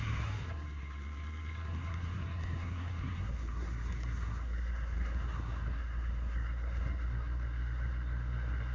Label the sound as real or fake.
fake